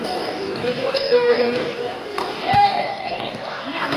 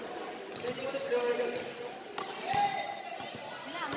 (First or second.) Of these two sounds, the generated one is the first